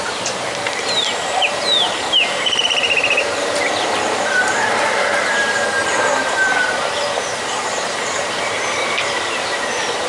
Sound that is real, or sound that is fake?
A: fake